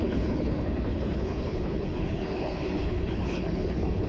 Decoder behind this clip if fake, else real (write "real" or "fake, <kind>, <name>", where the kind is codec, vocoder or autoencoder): fake, codec, HILCodec